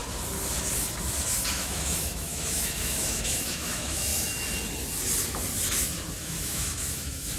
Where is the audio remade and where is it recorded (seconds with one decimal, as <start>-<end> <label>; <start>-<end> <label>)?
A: 0.0-1.5 recorded; 1.5-4.1 remade; 4.1-6.2 recorded; 6.2-7.4 remade